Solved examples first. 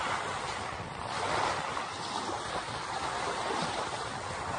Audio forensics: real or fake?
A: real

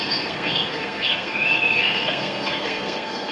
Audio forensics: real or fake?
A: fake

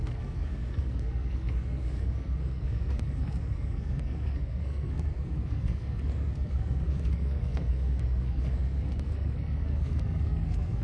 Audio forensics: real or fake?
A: fake